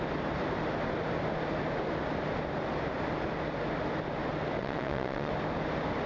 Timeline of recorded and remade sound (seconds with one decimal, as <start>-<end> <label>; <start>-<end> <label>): 0.0-4.6 recorded; 4.6-5.3 remade; 5.3-6.1 recorded